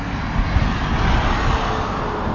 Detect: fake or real real